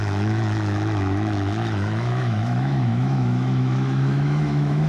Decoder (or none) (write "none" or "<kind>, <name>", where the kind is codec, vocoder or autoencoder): autoencoder, DAC-VAE